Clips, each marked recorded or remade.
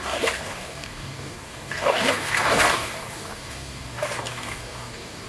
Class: remade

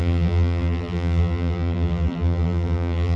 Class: remade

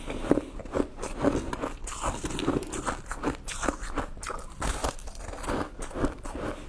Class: recorded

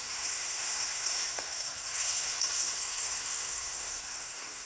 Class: remade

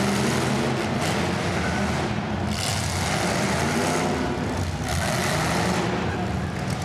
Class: recorded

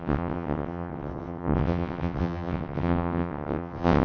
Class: remade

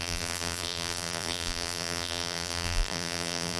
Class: remade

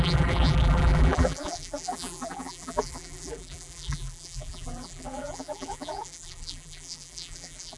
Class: remade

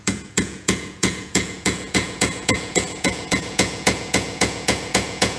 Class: remade